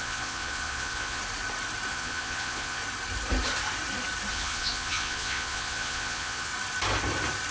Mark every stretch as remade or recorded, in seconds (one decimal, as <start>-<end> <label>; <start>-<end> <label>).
0.0-1.2 remade; 1.2-1.9 recorded; 1.9-2.8 remade; 2.8-4.3 recorded; 4.3-6.5 remade; 6.5-7.5 recorded